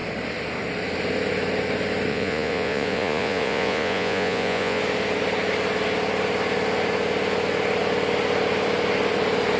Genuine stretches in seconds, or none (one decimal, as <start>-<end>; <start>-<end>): 0.0-2.1; 4.8-9.6